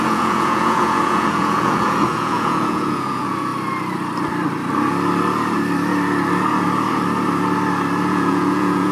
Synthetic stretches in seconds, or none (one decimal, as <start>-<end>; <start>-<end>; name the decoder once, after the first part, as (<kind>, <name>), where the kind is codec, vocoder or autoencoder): 0.0-3.5 (vocoder, Vocos); 8.1-8.9